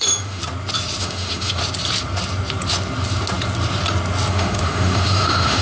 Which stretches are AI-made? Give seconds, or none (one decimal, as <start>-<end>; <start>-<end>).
0.0-0.4; 1.0-1.6; 4.3-5.6